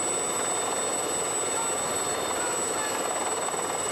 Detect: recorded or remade recorded